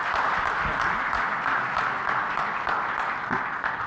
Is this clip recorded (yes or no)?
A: yes